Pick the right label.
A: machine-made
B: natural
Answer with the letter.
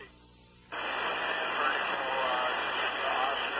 B